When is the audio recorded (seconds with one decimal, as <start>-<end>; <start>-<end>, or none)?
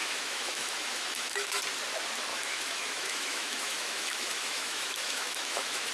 1.6-2.3